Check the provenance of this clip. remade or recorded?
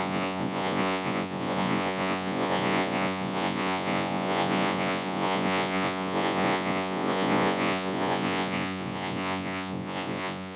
remade